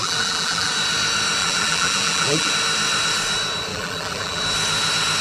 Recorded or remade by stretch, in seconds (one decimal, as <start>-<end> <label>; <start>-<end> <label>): 0.0-0.7 remade; 0.7-1.4 recorded; 1.4-2.5 remade; 2.5-3.7 recorded; 3.7-4.4 remade; 4.4-5.2 recorded